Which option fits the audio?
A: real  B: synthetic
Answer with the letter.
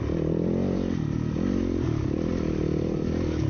A